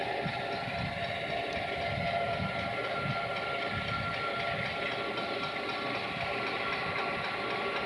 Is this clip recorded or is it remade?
recorded